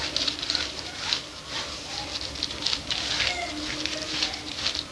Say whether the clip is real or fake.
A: real